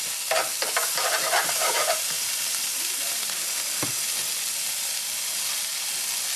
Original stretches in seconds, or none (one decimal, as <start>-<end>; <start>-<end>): 0.0-0.8; 3.4-6.4